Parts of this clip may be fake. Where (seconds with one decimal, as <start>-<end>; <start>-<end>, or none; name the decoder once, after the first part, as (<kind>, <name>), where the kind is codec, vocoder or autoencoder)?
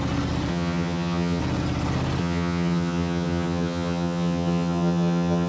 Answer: 0.5-1.4 (vocoder, HiFi-GAN); 2.2-5.5